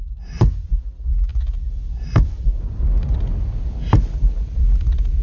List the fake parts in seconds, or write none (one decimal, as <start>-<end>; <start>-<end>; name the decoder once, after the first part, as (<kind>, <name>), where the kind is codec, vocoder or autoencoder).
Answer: none